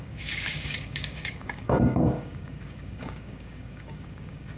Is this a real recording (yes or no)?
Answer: no